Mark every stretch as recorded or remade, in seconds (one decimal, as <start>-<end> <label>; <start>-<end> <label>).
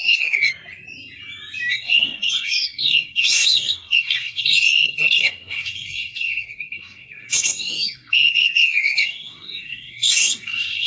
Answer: 0.0-0.5 remade; 0.5-1.7 recorded; 1.7-10.9 remade